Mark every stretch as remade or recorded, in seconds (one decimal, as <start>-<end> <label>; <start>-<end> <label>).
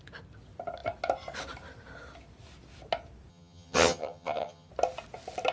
0.0-3.3 recorded; 3.3-4.7 remade; 4.7-5.5 recorded